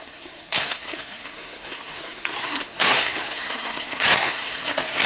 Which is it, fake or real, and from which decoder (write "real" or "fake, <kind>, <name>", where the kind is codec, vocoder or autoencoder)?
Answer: fake, codec, SNAC